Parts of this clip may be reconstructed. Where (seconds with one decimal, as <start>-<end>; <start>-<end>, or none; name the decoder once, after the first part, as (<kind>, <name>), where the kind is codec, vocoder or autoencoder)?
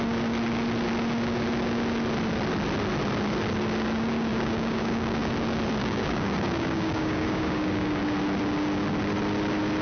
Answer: 4.3-5.3 (codec, DAC); 5.8-8.0